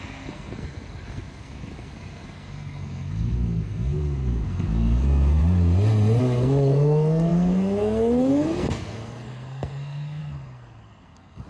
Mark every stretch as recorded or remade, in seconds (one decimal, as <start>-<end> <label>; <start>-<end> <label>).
0.0-5.4 remade; 5.4-6.2 recorded; 6.2-11.5 remade